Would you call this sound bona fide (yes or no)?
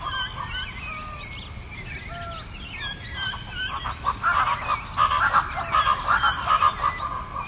yes